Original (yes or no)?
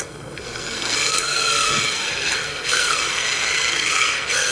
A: no